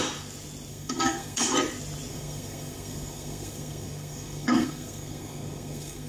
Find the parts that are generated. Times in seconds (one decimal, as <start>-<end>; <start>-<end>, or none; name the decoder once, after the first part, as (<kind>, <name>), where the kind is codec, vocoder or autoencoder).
0.7-1.5 (codec, SNAC); 2.1-6.1